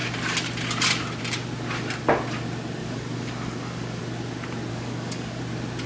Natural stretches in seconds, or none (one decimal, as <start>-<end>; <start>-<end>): 0.0-2.8; 4.0-4.7; 5.4-5.9